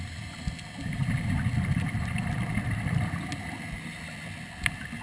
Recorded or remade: recorded